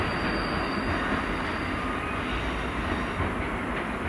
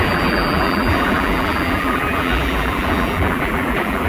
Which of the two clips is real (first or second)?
first